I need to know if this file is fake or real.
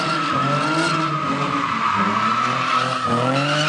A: real